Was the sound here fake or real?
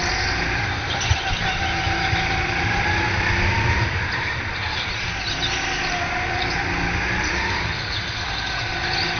real